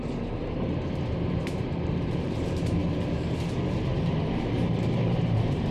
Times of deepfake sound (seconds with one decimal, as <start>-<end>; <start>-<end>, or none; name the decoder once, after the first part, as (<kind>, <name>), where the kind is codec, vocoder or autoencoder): 0.0-5.7 (vocoder, BigVGAN v2)